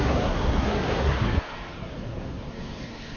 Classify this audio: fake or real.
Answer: fake